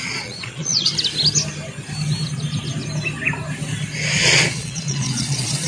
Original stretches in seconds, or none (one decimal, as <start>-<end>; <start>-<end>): 0.9-4.2